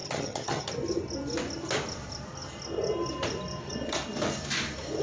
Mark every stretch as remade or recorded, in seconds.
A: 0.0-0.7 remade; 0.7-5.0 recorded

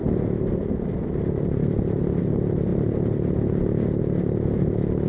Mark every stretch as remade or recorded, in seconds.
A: 0.0-5.1 recorded

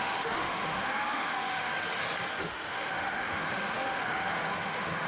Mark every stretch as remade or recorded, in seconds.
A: 0.0-1.7 remade; 1.7-2.4 recorded; 2.4-5.1 remade

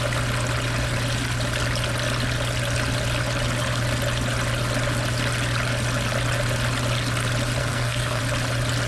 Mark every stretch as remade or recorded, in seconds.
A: 0.0-7.6 recorded; 7.6-8.2 remade; 8.2-8.9 recorded

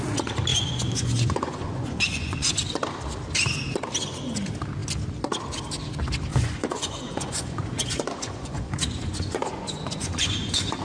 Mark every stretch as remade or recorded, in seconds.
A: 0.0-0.5 recorded; 0.5-2.5 remade; 2.5-6.3 recorded; 6.3-10.8 remade

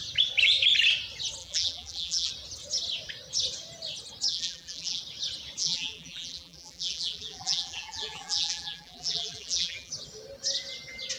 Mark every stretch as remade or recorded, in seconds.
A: 0.0-1.4 recorded; 1.4-2.3 remade; 2.3-4.3 recorded; 4.3-5.0 remade; 5.0-5.6 recorded; 5.6-9.9 remade; 9.9-11.2 recorded

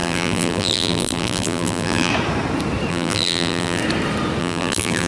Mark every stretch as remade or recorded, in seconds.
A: 0.0-2.1 remade; 2.1-2.9 recorded; 2.9-3.8 remade; 3.8-4.4 recorded; 4.4-5.1 remade